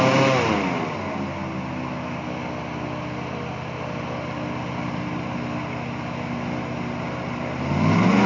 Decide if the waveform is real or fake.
real